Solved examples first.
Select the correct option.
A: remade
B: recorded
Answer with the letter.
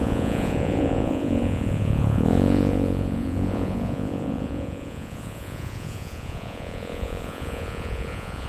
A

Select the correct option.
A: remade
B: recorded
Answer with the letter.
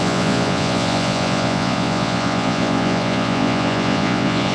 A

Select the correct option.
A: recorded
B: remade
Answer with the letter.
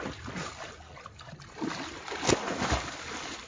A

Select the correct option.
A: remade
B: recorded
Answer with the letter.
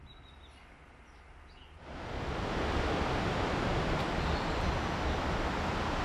B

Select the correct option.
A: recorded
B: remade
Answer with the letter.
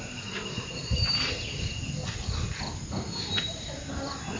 A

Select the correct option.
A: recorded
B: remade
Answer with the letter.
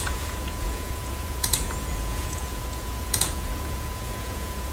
B